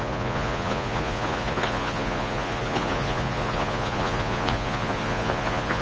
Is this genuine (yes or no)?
no